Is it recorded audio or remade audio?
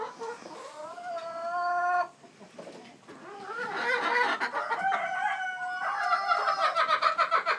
recorded